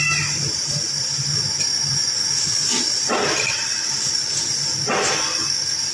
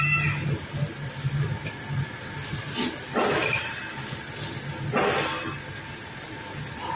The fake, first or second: first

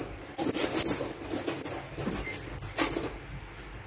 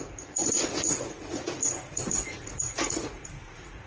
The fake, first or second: second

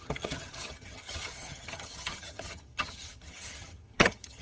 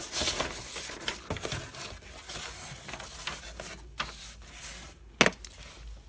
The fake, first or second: first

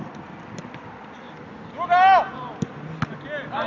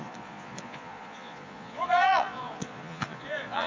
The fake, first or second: second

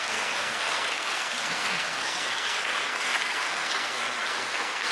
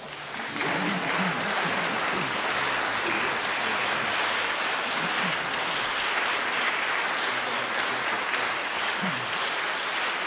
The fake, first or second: first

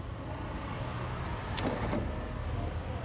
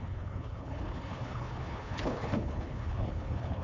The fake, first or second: second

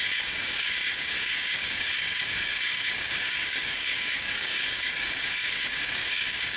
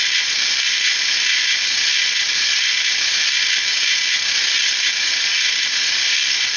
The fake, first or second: first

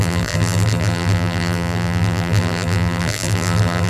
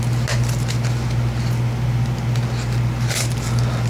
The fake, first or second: first